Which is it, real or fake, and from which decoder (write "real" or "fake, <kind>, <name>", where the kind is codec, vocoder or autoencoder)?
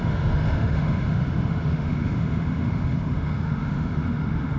fake, autoencoder, DAC-VAE